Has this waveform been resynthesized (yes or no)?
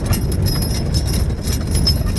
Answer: no